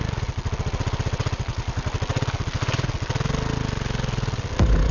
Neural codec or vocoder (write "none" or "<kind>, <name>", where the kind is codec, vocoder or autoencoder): none